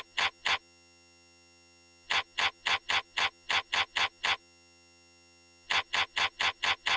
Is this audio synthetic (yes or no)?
yes